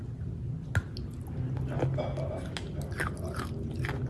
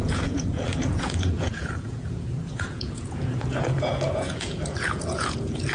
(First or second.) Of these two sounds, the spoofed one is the second